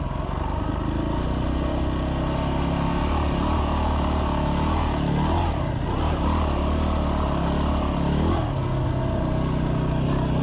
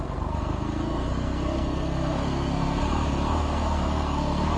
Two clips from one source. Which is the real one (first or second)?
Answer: first